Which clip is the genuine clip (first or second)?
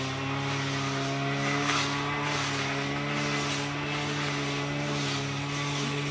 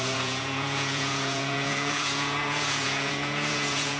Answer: first